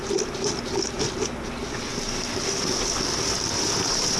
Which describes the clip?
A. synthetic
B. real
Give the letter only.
B